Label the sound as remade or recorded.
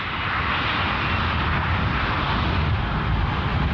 recorded